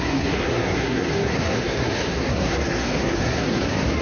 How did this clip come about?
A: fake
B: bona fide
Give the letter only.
A